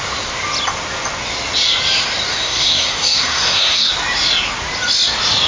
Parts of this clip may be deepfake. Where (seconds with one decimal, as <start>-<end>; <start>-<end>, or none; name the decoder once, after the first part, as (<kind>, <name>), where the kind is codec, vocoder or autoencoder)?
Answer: 2.3-3.9 (codec, SNAC)